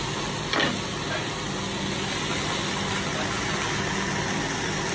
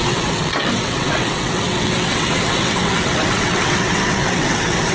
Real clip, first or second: first